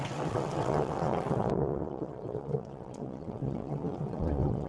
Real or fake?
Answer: fake